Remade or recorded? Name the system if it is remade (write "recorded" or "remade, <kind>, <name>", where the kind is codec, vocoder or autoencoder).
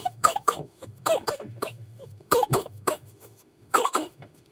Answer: remade, autoencoder, DAC-VAE